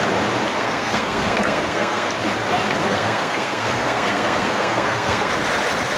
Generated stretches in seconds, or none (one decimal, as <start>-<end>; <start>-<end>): 0.5-2.1; 2.8-5.3